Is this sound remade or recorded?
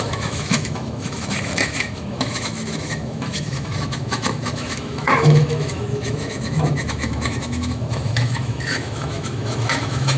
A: remade